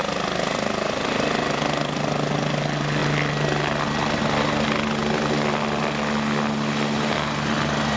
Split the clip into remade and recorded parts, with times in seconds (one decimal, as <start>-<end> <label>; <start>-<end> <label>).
0.0-8.0 recorded